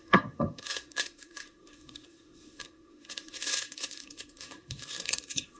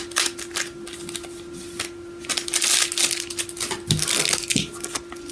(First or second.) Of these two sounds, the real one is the second